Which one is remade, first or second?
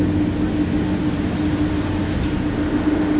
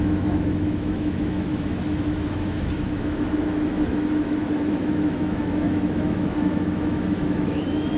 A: second